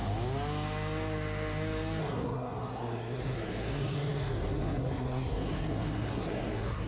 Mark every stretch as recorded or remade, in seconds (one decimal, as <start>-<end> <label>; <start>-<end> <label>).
0.0-2.0 recorded; 2.0-6.9 remade

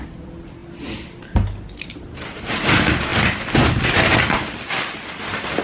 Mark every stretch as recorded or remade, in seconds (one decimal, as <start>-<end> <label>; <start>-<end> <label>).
0.0-0.6 remade; 0.6-1.8 recorded; 1.8-3.1 remade; 3.1-4.4 recorded; 4.4-5.6 remade

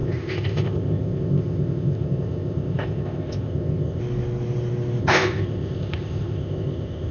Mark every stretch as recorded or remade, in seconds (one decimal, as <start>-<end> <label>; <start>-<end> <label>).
0.0-4.0 remade; 4.0-5.0 recorded; 5.0-7.1 remade